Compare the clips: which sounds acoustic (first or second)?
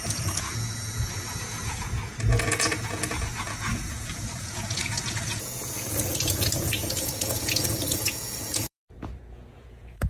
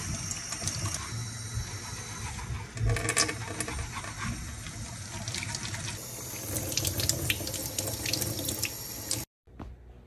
second